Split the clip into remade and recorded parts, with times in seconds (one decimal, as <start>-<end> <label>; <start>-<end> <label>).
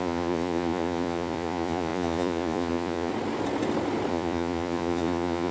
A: 0.0-3.1 remade; 3.1-4.1 recorded; 4.1-5.5 remade